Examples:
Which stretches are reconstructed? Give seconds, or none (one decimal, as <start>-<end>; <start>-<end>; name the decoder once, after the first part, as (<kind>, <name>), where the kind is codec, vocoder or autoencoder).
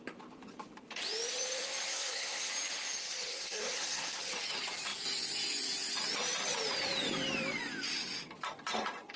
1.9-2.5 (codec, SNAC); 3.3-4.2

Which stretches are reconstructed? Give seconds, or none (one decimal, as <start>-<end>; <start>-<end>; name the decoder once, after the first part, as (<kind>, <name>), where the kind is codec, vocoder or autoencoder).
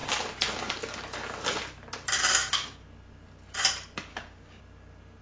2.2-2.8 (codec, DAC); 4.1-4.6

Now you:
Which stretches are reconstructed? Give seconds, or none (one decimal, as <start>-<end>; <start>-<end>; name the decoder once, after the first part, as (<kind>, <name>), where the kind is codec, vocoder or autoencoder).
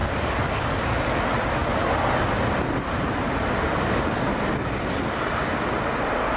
0.0-0.8 (vocoder, BigVGAN v2); 1.6-5.4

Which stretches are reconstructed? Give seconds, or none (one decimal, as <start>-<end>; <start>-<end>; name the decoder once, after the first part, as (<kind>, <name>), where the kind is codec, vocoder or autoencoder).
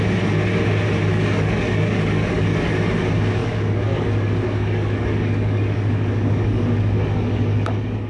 1.1-2.7 (codec, DAC); 3.4-8.1